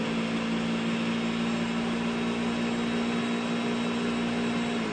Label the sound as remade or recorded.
recorded